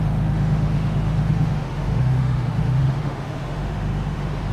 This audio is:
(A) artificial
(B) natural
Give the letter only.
A